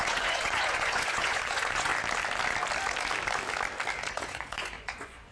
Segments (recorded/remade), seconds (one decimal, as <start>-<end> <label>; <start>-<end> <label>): 0.0-1.9 remade; 1.9-4.1 recorded; 4.1-5.3 remade